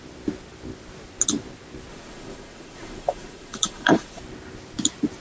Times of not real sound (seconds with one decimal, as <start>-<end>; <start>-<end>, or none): 1.9-4.2